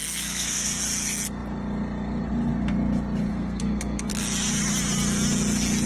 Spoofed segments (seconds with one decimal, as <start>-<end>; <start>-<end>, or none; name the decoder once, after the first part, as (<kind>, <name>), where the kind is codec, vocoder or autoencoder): 0.0-0.8 (codec, SNAC); 3.3-4.1